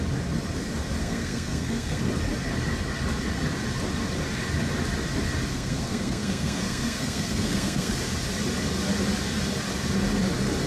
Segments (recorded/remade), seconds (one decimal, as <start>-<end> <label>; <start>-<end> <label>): 0.0-1.0 recorded; 1.0-2.1 remade; 2.1-5.5 recorded; 5.5-7.9 remade; 7.9-10.7 recorded